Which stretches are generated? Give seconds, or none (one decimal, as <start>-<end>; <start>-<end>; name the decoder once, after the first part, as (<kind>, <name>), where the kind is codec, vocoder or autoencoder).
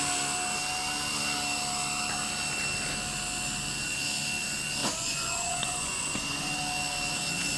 4.8-6.5 (vocoder, Vocos)